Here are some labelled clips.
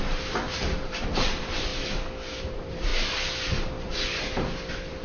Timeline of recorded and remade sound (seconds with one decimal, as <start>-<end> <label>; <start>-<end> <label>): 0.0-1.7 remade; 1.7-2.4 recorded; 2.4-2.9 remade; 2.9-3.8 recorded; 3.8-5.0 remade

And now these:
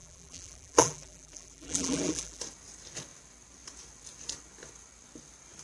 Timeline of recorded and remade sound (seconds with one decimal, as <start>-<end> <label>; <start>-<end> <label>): 0.0-2.4 remade; 2.4-5.6 recorded

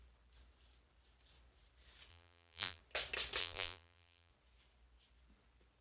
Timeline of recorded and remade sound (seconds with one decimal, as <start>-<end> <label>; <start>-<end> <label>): 0.0-2.1 recorded; 2.1-2.8 remade; 2.8-3.4 recorded; 3.4-4.3 remade; 4.3-5.8 recorded